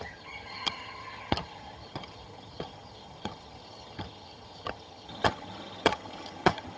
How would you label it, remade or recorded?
remade